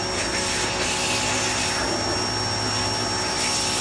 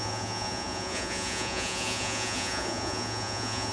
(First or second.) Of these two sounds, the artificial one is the second